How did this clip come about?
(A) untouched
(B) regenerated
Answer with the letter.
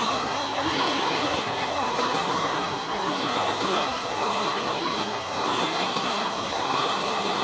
B